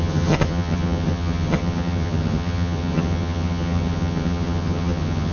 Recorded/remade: remade